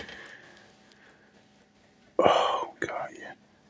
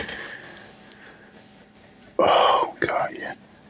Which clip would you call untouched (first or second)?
first